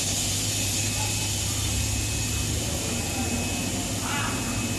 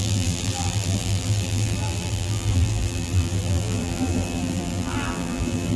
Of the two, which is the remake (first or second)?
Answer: second